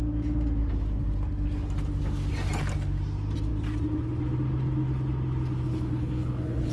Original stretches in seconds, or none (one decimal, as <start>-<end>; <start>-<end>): 0.0-5.7